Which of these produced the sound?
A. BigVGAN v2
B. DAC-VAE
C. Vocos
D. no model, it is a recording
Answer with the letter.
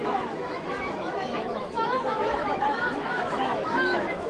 B